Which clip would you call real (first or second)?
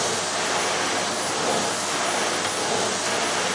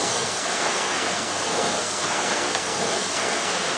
first